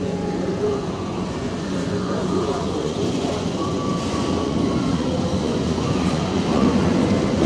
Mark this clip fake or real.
fake